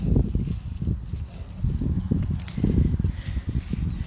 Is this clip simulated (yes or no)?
no